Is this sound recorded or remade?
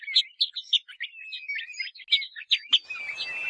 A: recorded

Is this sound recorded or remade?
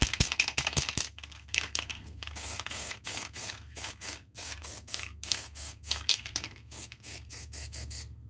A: remade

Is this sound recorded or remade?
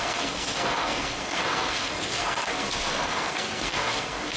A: remade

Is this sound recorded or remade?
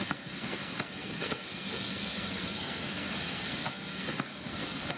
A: remade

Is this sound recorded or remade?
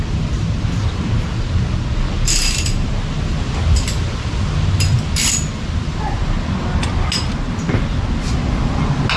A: recorded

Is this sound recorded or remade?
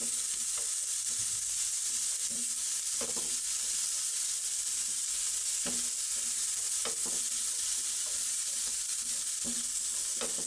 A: recorded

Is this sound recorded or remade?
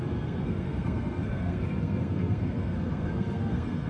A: remade